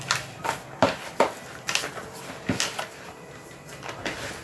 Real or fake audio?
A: real